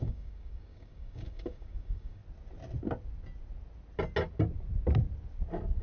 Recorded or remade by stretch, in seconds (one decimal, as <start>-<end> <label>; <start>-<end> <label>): 0.0-2.2 remade; 2.2-5.8 recorded